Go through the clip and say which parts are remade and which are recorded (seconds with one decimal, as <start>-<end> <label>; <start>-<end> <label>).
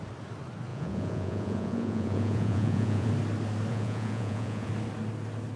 0.0-0.7 recorded; 0.7-3.1 remade; 3.1-3.7 recorded; 3.7-4.7 remade; 4.7-5.6 recorded